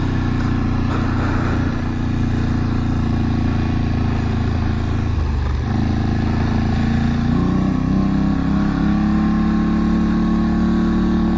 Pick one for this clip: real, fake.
real